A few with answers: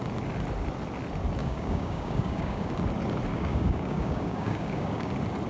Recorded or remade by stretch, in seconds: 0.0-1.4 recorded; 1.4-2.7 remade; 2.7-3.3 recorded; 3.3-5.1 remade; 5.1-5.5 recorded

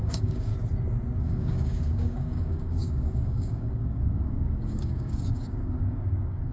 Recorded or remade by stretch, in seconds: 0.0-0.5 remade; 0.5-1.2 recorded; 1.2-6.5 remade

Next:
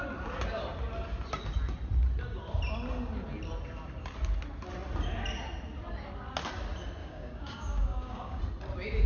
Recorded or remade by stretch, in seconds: 0.0-7.0 recorded; 7.0-8.4 remade; 8.4-9.1 recorded

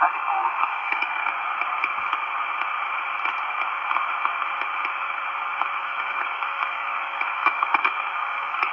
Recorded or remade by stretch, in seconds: 0.0-0.4 recorded; 0.4-1.2 remade; 1.2-5.8 recorded; 5.8-8.7 remade

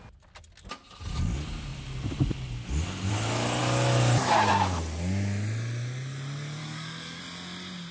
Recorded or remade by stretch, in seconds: 0.0-6.6 recorded; 6.6-7.2 remade; 7.2-7.9 recorded

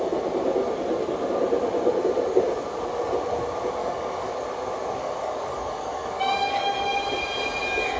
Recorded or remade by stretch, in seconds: 0.0-3.8 recorded; 3.8-4.3 remade; 4.3-5.0 recorded; 5.0-7.0 remade; 7.0-8.0 recorded